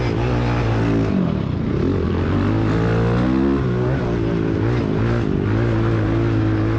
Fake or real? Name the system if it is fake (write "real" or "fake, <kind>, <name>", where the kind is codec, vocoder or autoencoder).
real